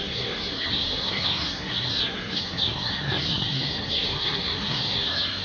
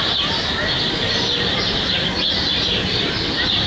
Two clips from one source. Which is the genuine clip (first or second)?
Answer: second